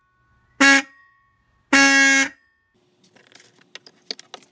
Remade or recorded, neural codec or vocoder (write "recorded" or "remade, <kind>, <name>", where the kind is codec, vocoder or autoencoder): recorded